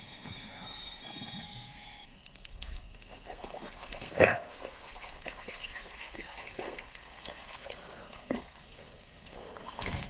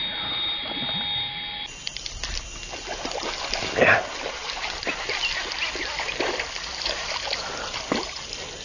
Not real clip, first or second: first